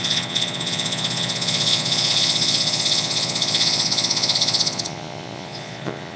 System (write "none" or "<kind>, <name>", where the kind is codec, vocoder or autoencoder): vocoder, Vocos